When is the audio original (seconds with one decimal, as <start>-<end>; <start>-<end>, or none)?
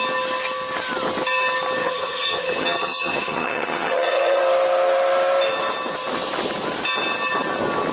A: 0.0-1.8; 4.4-7.9